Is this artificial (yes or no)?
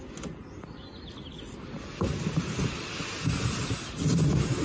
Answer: no